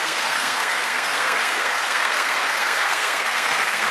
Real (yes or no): no